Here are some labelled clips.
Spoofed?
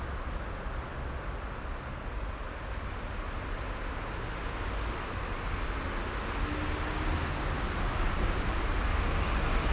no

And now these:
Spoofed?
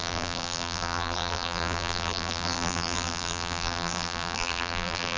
yes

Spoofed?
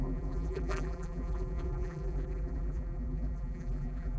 yes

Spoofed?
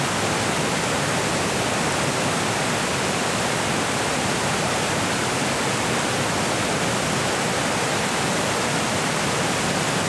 no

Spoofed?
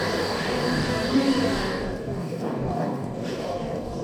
yes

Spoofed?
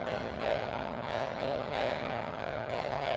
yes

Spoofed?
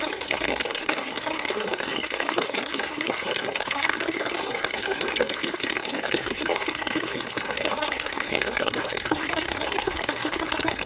yes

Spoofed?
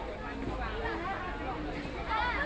no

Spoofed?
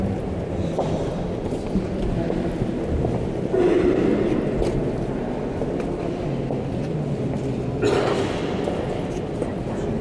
no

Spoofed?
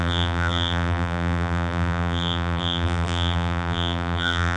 yes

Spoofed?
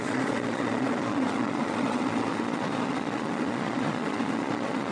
yes